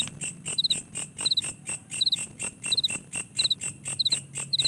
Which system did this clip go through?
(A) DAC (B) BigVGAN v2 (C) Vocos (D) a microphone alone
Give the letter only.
D